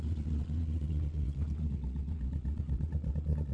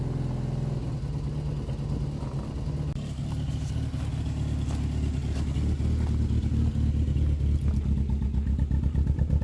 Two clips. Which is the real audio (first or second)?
second